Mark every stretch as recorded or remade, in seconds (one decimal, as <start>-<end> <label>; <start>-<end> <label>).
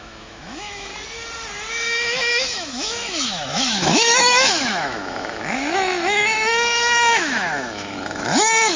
0.0-0.9 remade; 0.9-1.7 recorded; 1.7-8.8 remade